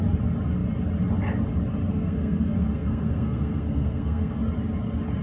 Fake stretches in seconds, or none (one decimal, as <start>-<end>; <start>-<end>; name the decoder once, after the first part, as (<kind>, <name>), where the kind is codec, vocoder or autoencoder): 1.9-4.4 (codec, SNAC)